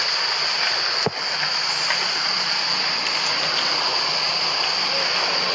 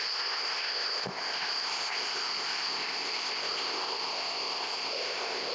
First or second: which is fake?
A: second